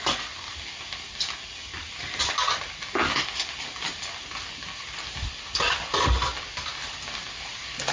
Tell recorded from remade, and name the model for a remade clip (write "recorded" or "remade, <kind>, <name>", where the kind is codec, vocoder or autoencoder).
recorded